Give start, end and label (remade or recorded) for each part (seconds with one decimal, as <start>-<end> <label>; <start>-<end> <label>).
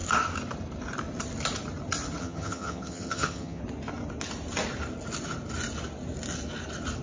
0.0-2.2 recorded; 2.2-3.6 remade; 3.6-7.0 recorded